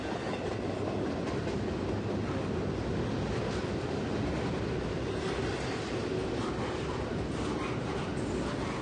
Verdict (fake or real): real